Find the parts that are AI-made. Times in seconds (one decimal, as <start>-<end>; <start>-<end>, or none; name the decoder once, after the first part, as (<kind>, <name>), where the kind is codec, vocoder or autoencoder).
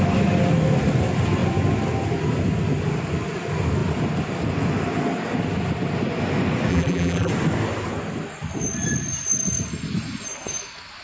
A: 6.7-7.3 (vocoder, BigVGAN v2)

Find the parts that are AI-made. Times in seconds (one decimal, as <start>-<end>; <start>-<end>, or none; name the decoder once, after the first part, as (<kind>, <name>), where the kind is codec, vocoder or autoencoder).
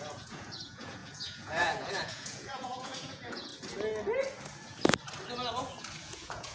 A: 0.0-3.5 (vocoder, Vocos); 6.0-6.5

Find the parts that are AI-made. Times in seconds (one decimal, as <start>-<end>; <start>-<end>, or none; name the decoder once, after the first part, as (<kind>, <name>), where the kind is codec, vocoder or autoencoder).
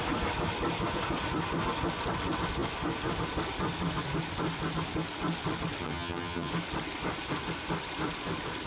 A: 5.8-6.5 (vocoder, HiFi-GAN)